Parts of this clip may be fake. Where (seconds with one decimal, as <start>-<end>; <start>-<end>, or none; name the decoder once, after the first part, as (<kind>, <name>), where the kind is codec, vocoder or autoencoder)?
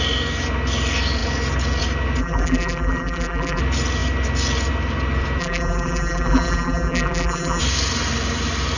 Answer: 2.2-3.6 (vocoder, BigVGAN v2); 5.4-7.6